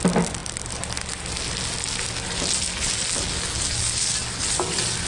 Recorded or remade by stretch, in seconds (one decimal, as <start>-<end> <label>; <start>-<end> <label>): 0.0-5.1 recorded